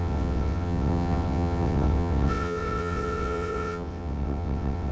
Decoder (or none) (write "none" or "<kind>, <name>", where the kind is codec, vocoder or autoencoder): vocoder, WaveNeXt